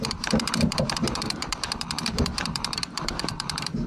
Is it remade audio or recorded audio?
remade